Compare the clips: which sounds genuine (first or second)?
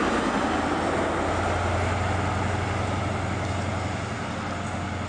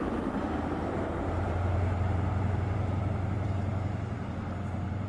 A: first